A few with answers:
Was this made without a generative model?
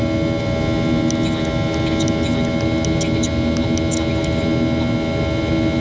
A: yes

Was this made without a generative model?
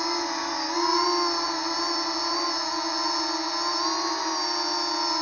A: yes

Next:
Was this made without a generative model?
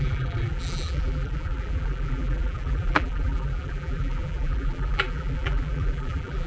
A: no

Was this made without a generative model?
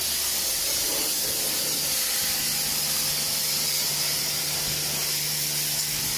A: yes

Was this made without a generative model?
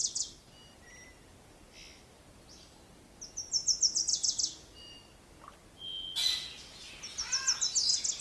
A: yes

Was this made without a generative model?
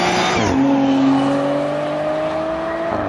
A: yes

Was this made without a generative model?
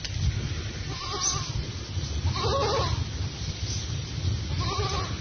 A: yes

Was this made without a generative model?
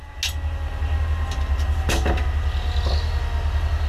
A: yes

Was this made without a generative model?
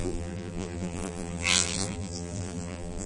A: no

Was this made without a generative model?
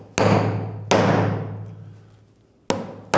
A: yes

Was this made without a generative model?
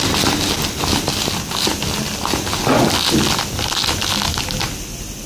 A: yes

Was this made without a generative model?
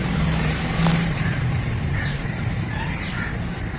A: no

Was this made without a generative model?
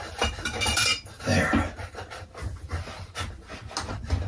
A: yes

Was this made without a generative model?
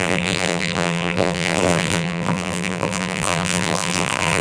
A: no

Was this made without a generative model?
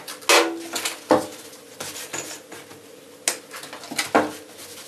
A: yes